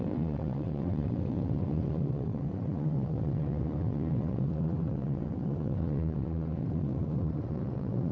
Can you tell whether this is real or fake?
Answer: fake